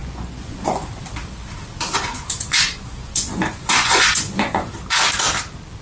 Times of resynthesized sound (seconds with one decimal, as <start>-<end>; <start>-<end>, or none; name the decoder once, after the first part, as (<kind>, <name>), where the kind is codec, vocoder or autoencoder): 0.0-1.0 (vocoder, Vocos); 2.1-4.7